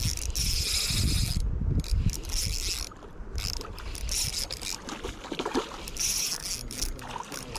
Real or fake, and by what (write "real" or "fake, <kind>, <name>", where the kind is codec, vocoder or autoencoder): real